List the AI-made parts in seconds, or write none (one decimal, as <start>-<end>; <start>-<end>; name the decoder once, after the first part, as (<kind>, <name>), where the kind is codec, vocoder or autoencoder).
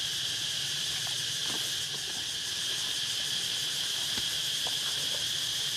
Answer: 0.0-1.4 (vocoder, BigVGAN v2); 3.7-5.8